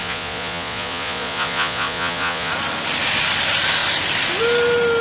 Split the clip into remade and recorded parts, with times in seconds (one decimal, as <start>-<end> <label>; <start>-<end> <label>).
0.0-2.5 remade; 2.5-5.0 recorded